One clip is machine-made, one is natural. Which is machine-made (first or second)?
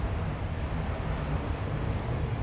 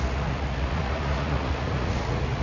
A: second